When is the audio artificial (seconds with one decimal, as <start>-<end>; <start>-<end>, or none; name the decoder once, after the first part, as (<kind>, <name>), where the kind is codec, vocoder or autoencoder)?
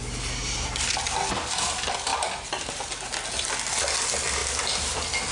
0.4-1.2 (vocoder, BigVGAN v2); 2.1-2.7; 4.4-5.3